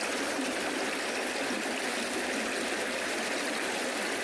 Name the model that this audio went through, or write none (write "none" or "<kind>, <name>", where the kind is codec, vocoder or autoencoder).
none